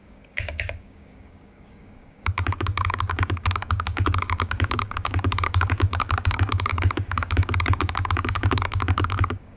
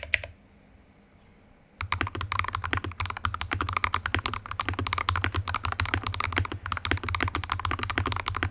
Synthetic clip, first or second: first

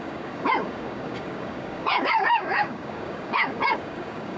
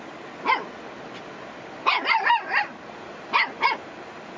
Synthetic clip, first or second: first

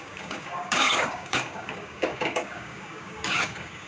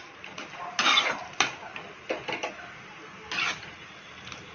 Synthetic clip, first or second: first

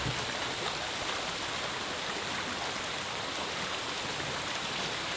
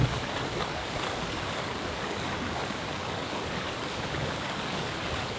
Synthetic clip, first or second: second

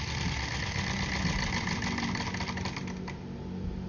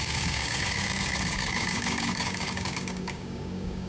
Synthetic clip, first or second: second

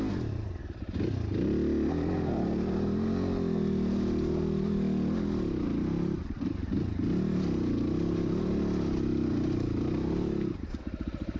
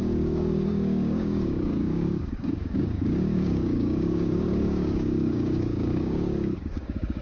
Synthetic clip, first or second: second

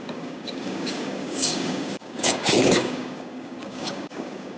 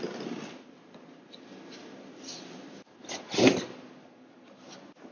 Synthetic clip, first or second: first